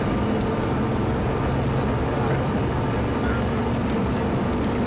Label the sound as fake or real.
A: real